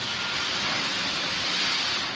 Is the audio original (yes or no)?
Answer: yes